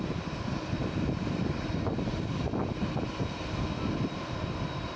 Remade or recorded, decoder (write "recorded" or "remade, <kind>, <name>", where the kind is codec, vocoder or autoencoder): recorded